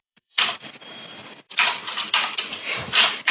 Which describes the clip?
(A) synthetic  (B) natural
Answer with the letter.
A